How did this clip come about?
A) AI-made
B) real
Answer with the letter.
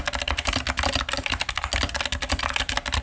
B